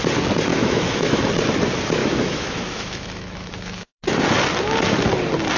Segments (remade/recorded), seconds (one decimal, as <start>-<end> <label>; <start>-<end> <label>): 0.0-0.5 recorded; 0.5-1.2 remade; 1.2-2.0 recorded; 2.0-4.0 remade; 4.0-5.6 recorded